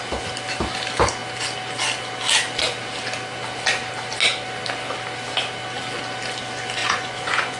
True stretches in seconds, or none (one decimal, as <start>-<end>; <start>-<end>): 0.0-6.8